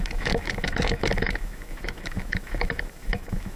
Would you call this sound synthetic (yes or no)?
yes